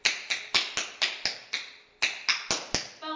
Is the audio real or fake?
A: real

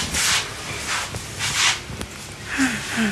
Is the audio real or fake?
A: real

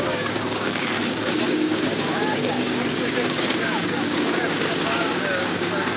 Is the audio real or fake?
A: fake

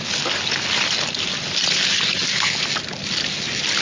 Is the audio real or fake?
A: real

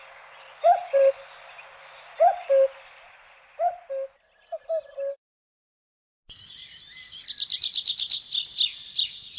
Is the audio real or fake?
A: real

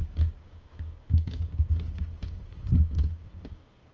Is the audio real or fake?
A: fake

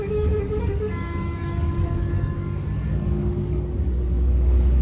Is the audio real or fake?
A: fake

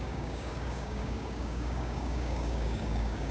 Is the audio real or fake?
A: fake